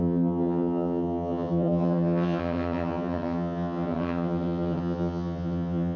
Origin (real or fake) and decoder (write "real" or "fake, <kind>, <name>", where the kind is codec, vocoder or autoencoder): fake, vocoder, HiFi-GAN